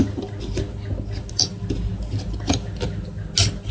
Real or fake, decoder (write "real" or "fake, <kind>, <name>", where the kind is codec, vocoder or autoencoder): real